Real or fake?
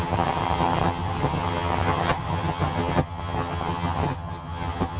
fake